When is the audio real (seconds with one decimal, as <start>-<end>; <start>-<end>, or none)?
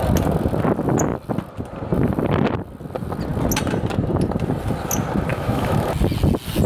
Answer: 0.0-5.3; 5.9-6.7